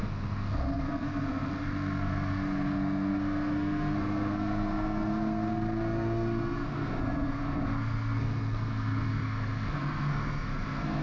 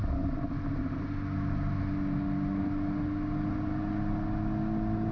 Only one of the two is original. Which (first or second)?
second